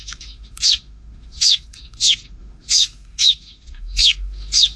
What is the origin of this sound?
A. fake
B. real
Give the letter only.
A